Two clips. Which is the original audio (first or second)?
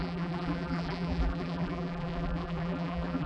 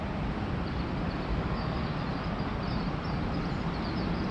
second